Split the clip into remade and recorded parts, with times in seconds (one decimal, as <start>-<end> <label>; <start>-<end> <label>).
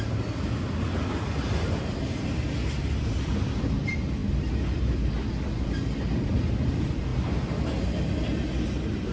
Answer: 0.0-9.1 recorded